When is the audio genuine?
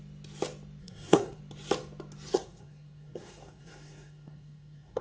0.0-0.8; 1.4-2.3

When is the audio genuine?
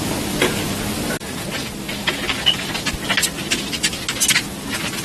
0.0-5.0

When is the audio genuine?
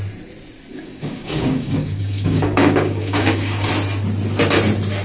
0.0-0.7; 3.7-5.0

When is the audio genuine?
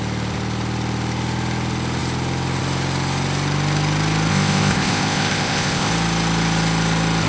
0.0-4.3; 5.9-7.3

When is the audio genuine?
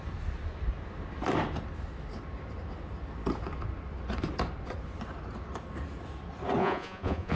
0.0-6.6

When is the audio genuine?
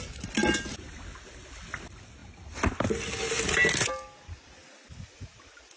0.0-5.8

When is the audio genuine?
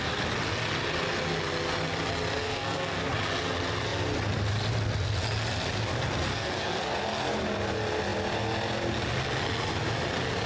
0.0-2.4; 3.1-6.3; 7.0-10.5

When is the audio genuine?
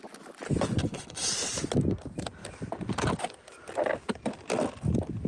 0.0-0.8; 1.3-5.3